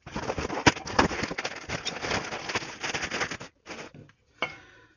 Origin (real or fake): real